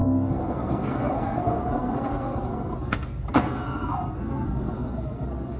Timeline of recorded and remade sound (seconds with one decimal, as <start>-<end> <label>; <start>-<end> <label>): 0.0-5.6 remade